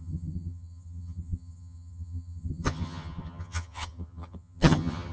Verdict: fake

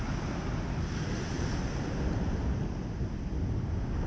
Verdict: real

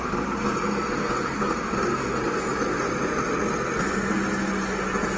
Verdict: real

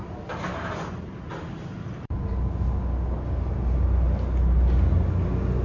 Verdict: real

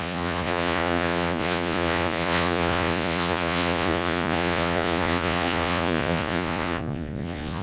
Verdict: fake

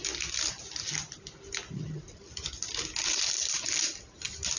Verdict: real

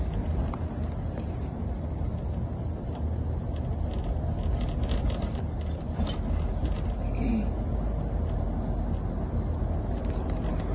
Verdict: real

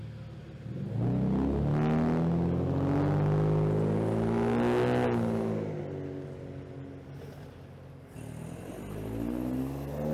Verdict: real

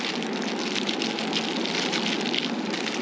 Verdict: real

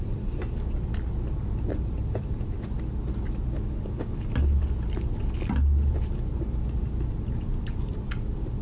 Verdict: real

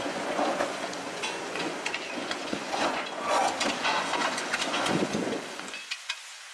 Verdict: fake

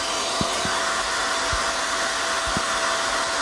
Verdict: real